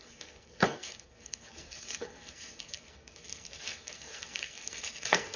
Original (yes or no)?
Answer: no